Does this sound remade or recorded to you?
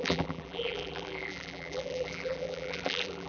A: remade